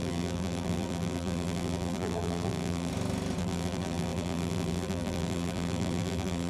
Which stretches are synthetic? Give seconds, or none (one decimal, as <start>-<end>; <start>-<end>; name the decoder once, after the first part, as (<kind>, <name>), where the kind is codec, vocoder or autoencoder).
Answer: 0.0-2.9 (vocoder, BigVGAN v2); 3.4-6.5